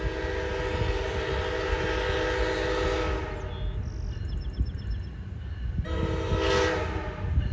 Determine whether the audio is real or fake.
real